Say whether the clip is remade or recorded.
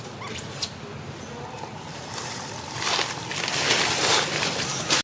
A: recorded